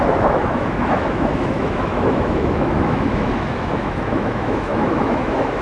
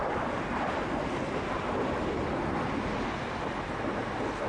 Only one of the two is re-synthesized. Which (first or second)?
first